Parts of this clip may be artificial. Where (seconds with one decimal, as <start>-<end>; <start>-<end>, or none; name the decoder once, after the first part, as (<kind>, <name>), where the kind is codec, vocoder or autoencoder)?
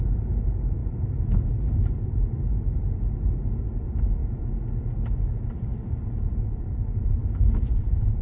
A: 0.0-4.2 (vocoder, BigVGAN v2); 5.3-8.2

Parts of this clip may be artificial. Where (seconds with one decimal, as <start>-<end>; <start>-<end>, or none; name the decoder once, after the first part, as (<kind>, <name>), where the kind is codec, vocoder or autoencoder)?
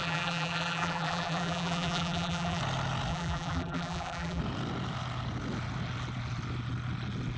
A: 0.0-2.6 (vocoder, BigVGAN v2); 3.1-4.4